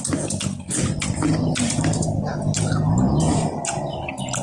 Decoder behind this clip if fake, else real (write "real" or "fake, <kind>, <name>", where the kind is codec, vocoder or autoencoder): real